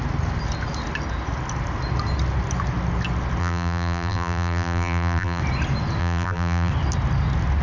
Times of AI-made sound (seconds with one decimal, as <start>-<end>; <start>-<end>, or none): 3.4-5.4; 6.0-6.7